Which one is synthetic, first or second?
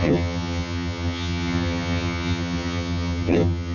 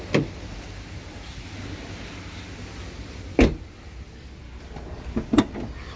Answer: first